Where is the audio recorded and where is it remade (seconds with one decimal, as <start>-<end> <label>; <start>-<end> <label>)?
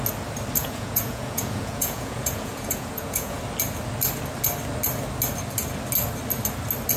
0.0-0.6 recorded; 0.6-3.4 remade; 3.4-7.0 recorded